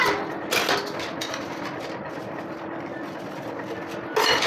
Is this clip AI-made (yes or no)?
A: no